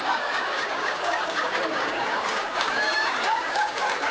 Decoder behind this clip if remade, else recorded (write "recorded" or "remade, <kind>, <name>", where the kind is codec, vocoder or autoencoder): remade, codec, DAC